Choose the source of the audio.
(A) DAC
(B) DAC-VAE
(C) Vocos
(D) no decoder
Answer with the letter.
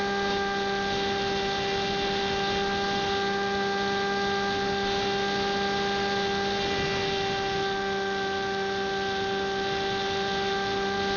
D